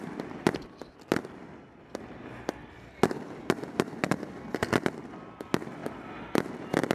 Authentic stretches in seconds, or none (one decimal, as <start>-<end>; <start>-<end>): 0.0-6.9